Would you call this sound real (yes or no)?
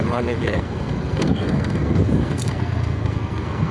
no